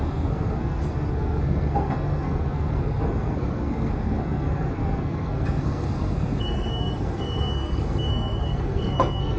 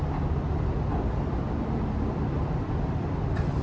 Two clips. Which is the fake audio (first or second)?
first